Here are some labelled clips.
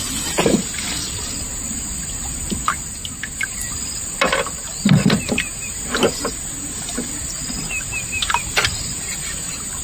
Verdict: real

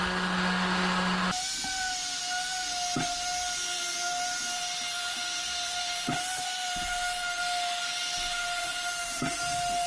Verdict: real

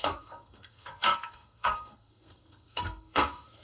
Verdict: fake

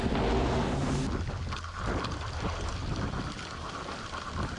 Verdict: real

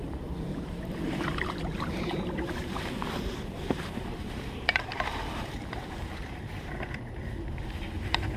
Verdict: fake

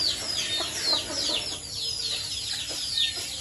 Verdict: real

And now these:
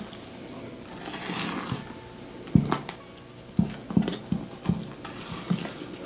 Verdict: real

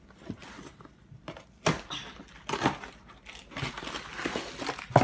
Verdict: real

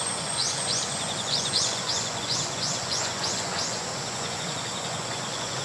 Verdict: fake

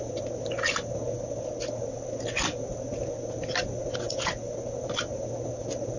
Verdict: real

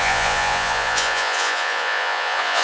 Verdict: fake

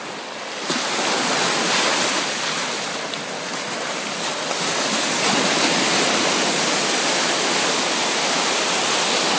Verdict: real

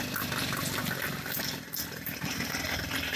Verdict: fake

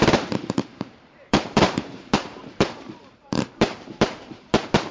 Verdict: fake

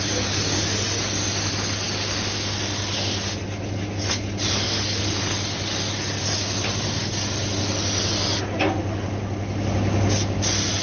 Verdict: real